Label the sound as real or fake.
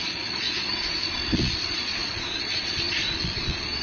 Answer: fake